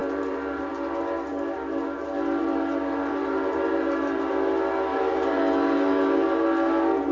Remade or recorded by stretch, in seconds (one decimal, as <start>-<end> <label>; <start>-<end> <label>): 0.0-4.3 remade; 4.3-4.9 recorded; 4.9-5.4 remade; 5.4-7.1 recorded

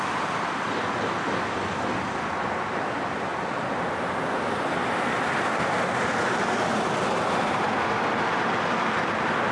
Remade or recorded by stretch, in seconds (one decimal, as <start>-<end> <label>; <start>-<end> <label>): 0.0-6.7 recorded; 6.7-9.1 remade; 9.1-9.5 recorded

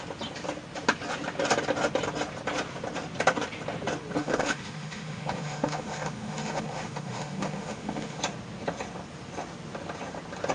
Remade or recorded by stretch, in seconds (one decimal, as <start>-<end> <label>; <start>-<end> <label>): 0.0-4.2 recorded; 4.2-8.2 remade; 8.2-10.5 recorded

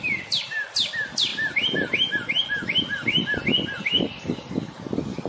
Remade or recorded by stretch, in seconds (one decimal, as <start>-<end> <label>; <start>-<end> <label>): 0.0-5.3 recorded

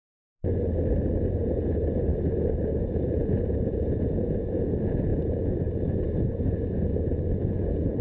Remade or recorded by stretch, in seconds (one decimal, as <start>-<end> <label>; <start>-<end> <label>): 0.0-1.3 recorded; 1.3-1.8 remade; 1.8-2.8 recorded; 2.8-8.0 remade

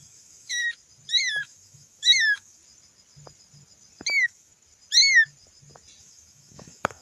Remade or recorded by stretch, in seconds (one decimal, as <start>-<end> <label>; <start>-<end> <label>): 0.0-0.6 remade; 0.6-1.4 recorded; 1.4-2.6 remade; 2.6-4.1 recorded; 4.1-4.5 remade; 4.5-6.0 recorded; 6.0-7.0 remade

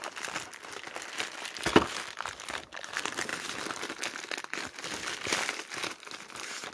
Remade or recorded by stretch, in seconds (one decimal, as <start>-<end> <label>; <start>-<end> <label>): 0.0-6.7 recorded

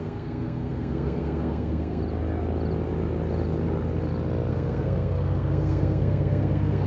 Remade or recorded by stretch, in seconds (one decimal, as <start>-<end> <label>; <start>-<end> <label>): 0.0-2.0 remade; 2.0-4.5 recorded; 4.5-6.9 remade